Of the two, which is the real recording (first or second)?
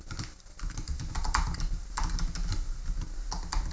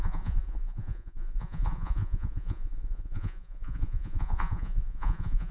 first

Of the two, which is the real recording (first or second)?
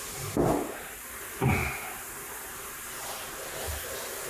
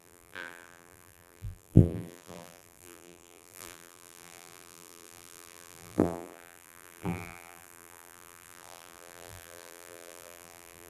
first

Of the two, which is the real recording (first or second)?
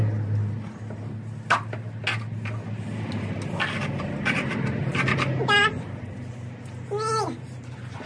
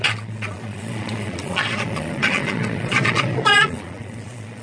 first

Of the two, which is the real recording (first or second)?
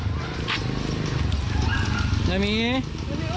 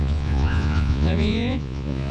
first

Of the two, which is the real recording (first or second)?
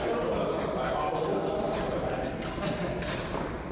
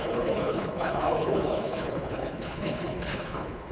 first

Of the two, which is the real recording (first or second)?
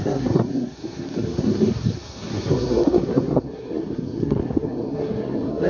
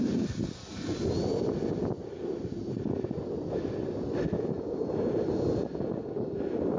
second